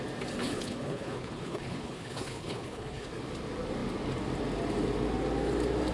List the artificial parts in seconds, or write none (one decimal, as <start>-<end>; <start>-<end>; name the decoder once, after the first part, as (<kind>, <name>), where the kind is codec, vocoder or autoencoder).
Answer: 0.4-3.1 (codec, HILCodec)